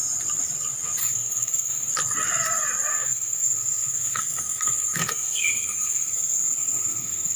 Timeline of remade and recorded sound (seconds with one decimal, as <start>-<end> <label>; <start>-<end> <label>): 0.0-1.0 recorded; 1.0-1.9 remade; 1.9-2.9 recorded; 2.9-7.4 remade